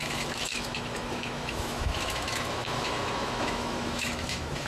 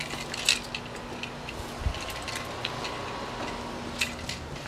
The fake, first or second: first